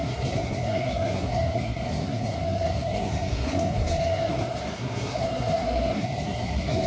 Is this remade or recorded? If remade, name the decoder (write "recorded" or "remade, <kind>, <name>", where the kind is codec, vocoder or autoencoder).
remade, codec, SNAC